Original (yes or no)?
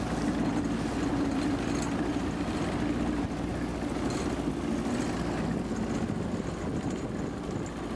yes